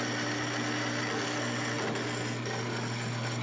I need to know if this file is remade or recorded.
recorded